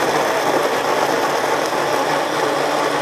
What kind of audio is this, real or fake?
real